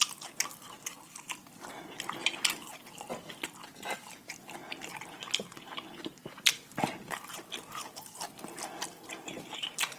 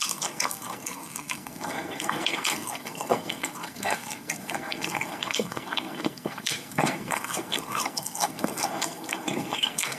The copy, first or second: second